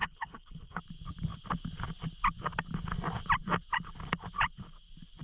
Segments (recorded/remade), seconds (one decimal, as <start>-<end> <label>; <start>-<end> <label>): 0.0-0.8 remade; 0.8-5.2 recorded